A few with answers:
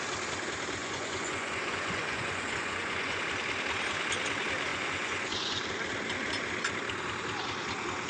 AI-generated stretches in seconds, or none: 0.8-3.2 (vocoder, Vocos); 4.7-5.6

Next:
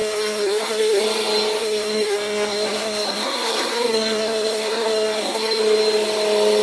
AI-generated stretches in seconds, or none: 0.0-1.0 (codec, SNAC); 1.6-5.6

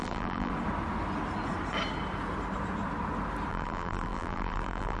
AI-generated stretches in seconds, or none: 0.0-0.5 (vocoder, BigVGAN v2); 3.5-5.0

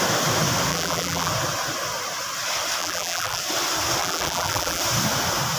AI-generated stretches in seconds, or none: 0.7-1.3 (vocoder, BigVGAN v2); 2.8-3.4; 4.0-4.8

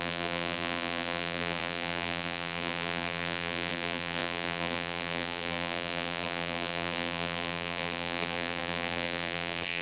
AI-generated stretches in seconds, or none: 0.0-9.8 (vocoder, BigVGAN v2)